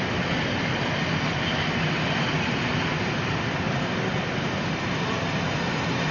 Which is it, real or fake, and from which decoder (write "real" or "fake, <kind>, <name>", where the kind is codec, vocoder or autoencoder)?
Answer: real